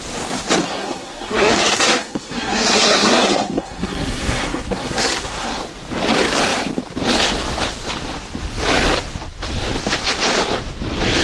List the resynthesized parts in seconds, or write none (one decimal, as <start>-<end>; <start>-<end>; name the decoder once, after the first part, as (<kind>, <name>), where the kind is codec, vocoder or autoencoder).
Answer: 0.6-5.6 (codec, SNAC)